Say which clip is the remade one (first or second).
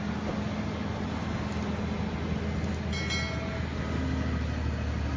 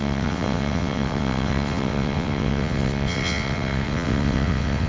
second